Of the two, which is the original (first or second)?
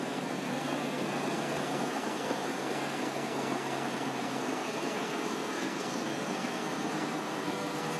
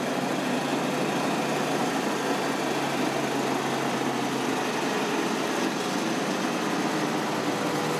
second